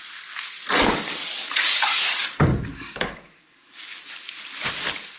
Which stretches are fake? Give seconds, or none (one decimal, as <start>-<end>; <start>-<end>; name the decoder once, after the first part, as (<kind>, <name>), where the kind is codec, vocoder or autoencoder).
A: 0.9-4.0 (codec, DAC)